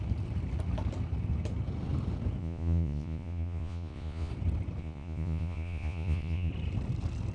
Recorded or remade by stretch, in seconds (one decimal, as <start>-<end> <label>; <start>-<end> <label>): 0.0-2.4 recorded; 2.4-4.3 remade; 4.3-4.8 recorded; 4.8-6.5 remade; 6.5-7.3 recorded